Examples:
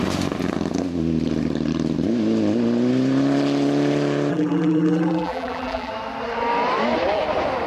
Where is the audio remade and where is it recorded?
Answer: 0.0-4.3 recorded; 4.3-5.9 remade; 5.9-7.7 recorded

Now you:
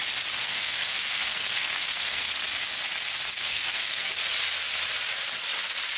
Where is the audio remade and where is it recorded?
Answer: 0.0-0.4 recorded; 0.4-2.3 remade; 2.3-3.4 recorded; 3.4-4.1 remade; 4.1-6.0 recorded

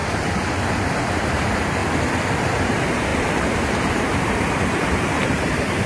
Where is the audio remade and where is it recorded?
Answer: 0.0-0.6 recorded; 0.6-1.8 remade; 1.8-2.6 recorded; 2.6-5.9 remade

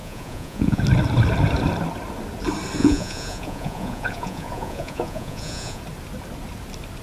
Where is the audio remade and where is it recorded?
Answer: 0.0-0.8 remade; 0.8-2.8 recorded; 2.8-5.8 remade; 5.8-7.0 recorded